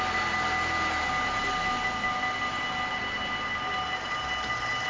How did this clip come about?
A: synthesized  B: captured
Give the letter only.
B